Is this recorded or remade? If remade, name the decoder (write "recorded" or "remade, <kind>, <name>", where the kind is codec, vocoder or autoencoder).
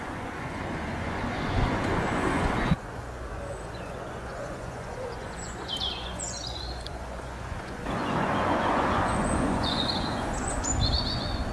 remade, vocoder, Vocos